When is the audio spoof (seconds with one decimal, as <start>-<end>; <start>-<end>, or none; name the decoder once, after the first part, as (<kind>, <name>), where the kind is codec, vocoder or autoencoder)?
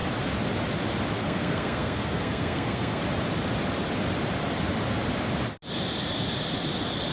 1.2-3.0 (codec, SNAC)